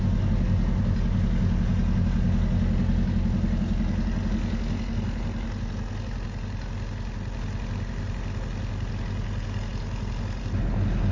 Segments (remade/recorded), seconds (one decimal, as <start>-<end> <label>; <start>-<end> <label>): 0.0-11.1 recorded